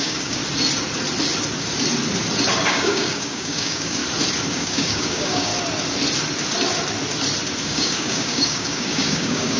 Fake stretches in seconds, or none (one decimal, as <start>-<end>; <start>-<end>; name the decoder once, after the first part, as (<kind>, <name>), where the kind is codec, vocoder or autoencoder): 0.0-0.4 (codec, DAC); 2.7-4.0; 4.5-5.5; 7.6-9.6